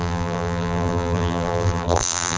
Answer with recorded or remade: remade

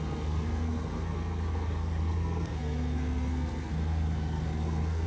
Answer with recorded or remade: remade